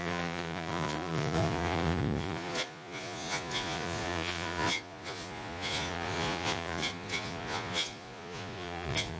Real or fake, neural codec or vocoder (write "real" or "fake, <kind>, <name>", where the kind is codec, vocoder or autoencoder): fake, vocoder, Vocos